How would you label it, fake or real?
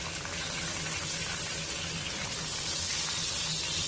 real